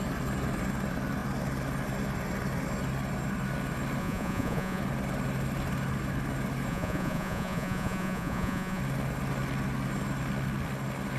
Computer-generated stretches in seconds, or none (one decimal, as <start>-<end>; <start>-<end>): 4.0-4.8; 6.7-8.8